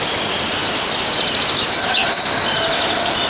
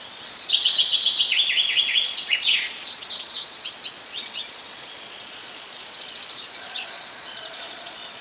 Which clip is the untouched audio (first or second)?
first